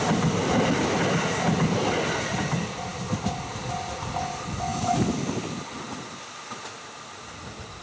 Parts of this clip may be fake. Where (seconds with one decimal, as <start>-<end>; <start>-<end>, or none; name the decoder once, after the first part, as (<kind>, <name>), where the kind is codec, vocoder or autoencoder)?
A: none